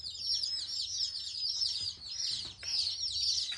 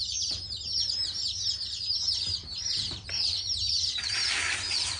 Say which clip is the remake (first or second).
second